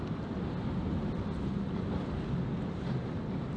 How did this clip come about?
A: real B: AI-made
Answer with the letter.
A